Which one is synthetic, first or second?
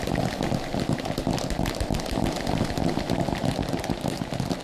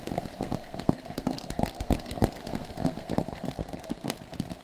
second